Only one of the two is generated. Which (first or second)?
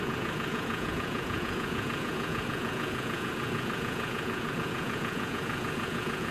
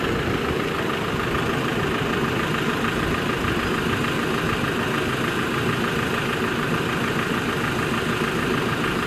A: first